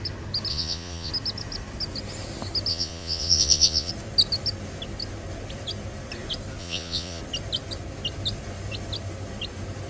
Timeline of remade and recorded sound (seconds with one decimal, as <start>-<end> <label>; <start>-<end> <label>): 0.0-0.5 recorded; 0.5-1.1 remade; 1.1-2.7 recorded; 2.7-3.9 remade; 3.9-6.6 recorded; 6.6-7.2 remade; 7.2-9.9 recorded